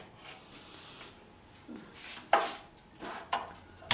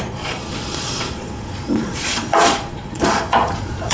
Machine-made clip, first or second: second